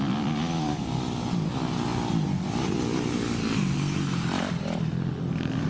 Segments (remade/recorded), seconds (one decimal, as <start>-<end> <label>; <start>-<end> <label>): 0.0-5.7 recorded